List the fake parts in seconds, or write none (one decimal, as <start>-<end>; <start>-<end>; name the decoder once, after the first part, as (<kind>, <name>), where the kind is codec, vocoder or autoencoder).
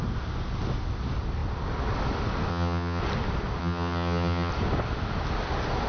2.5-3.0 (vocoder, HiFi-GAN); 3.6-4.5